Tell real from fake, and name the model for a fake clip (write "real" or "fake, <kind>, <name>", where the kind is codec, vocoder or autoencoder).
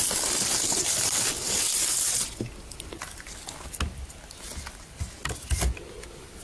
real